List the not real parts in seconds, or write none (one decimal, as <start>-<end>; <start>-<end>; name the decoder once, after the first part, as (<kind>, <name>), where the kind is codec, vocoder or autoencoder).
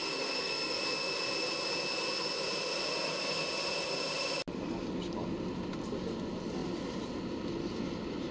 0.0-0.8 (codec, SNAC)